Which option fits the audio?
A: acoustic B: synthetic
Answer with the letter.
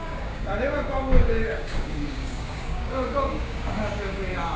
B